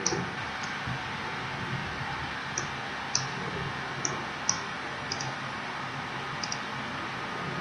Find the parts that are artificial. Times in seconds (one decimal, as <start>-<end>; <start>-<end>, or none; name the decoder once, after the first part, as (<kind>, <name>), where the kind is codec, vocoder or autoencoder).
none